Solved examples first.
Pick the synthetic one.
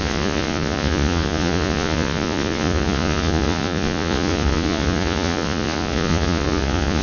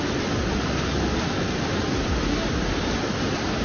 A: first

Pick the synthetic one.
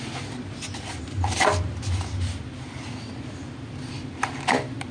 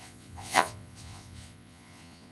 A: second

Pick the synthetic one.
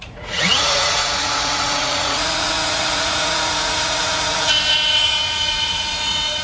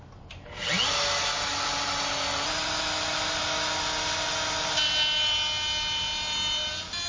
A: first